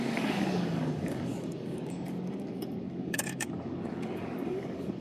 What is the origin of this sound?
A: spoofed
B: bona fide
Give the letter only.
A